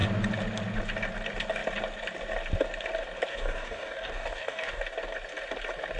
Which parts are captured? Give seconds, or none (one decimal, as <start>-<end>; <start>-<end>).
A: 0.0-3.3; 4.8-6.0